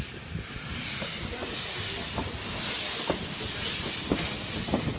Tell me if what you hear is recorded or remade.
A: recorded